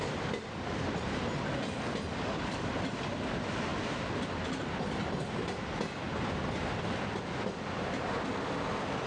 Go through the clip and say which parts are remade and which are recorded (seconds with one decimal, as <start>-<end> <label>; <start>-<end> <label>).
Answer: 0.0-2.1 recorded; 2.1-2.7 remade; 2.7-9.1 recorded